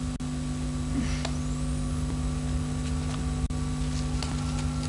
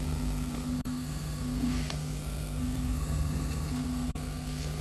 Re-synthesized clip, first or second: second